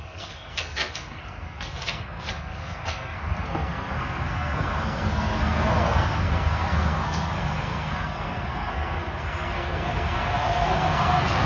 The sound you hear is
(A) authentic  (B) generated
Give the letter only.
B